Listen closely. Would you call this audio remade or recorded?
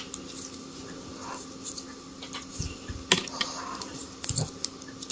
recorded